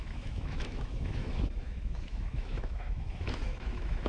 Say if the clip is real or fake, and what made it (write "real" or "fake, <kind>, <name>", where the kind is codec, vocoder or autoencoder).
fake, autoencoder, DAC-VAE